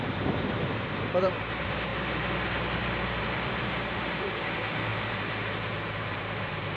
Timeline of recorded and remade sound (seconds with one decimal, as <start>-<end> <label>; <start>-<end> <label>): 0.0-1.9 remade; 1.9-3.2 recorded; 3.2-6.8 remade